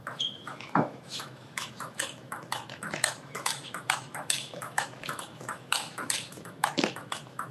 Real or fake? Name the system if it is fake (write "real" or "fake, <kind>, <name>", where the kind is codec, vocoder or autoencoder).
fake, autoencoder, DAC-VAE